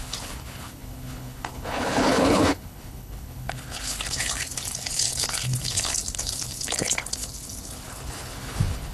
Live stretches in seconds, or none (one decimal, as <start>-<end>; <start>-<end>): none